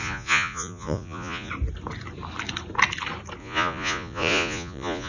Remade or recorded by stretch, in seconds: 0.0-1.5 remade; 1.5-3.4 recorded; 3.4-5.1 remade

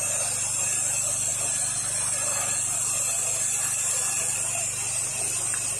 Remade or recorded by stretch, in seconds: 0.0-5.8 recorded

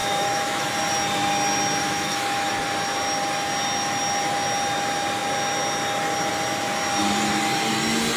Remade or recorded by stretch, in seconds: 0.0-0.7 remade; 0.7-1.8 recorded; 1.8-2.5 remade; 2.5-8.2 recorded

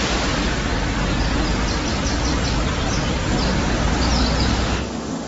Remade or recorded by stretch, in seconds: 0.0-4.5 recorded; 4.5-5.3 remade